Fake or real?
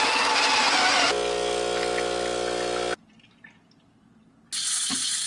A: real